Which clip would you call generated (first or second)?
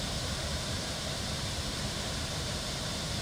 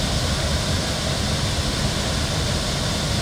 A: first